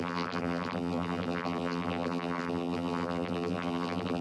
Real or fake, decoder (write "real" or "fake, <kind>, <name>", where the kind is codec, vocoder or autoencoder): fake, vocoder, BigVGAN v2